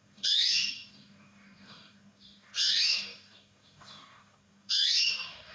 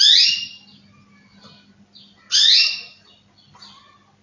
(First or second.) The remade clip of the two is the first